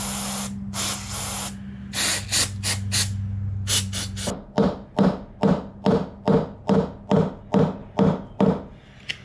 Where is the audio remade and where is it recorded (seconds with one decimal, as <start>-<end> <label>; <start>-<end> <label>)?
0.0-9.2 recorded